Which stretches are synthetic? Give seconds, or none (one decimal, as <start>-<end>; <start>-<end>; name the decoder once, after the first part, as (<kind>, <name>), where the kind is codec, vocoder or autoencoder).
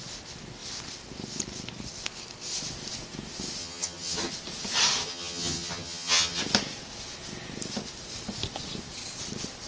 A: 3.6-4.3 (vocoder, HiFi-GAN); 5.0-6.4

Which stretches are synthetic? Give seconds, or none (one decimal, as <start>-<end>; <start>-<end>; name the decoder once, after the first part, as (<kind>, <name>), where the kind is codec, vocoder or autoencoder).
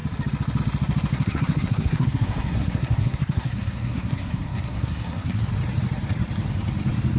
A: 1.1-5.4 (codec, SNAC)